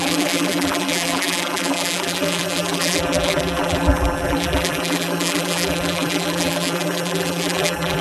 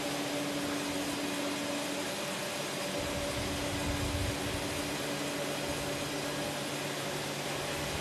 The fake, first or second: first